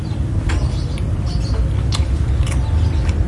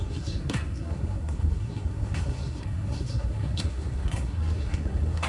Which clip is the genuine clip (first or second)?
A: first